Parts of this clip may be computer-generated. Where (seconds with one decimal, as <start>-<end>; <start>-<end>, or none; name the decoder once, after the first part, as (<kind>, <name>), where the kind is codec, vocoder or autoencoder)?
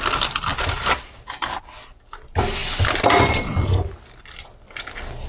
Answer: 0.5-1.2 (vocoder, BigVGAN v2)